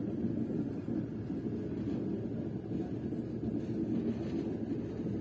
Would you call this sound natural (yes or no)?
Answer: yes